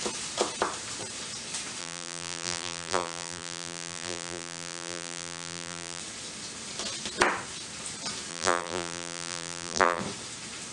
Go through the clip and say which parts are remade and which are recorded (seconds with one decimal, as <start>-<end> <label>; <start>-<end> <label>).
0.0-1.8 recorded; 1.8-6.0 remade; 6.0-8.3 recorded; 8.3-10.0 remade; 10.0-10.7 recorded